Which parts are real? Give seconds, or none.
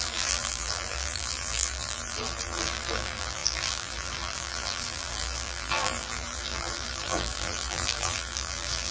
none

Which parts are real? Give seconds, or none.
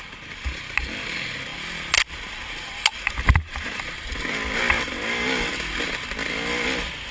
0.0-7.1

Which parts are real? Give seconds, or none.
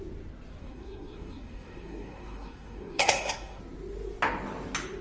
0.0-0.6; 3.6-5.0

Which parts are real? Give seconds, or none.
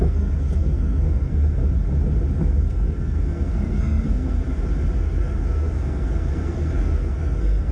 1.6-2.4; 4.4-5.0